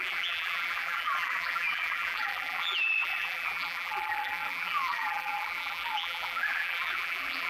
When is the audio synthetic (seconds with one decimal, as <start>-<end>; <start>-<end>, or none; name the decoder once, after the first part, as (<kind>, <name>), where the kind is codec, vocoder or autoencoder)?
0.0-7.5 (vocoder, BigVGAN v2)